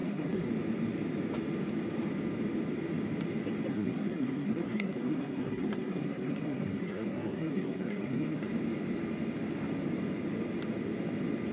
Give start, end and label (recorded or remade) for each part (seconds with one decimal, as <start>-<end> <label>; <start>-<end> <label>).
0.0-0.5 remade; 0.5-3.7 recorded; 3.7-8.5 remade; 8.5-11.5 recorded

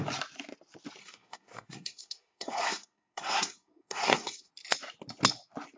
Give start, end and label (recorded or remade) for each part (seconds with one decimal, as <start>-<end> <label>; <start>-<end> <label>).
0.0-1.0 recorded; 1.0-4.5 remade; 4.5-5.8 recorded